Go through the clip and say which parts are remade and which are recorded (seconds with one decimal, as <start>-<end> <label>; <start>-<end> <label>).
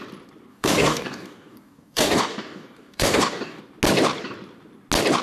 0.0-0.5 recorded; 0.5-3.6 remade; 3.6-5.2 recorded